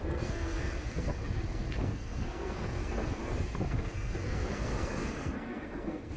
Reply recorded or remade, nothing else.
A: remade